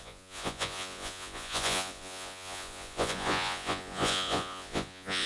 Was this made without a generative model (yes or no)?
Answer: no